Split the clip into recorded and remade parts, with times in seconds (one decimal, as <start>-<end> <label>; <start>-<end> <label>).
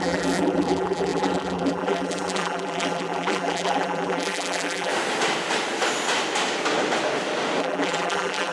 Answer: 0.0-4.9 remade; 4.9-7.6 recorded; 7.6-8.5 remade